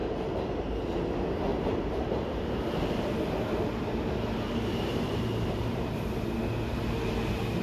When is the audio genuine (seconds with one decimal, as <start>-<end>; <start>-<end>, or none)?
0.7-1.5; 6.1-7.6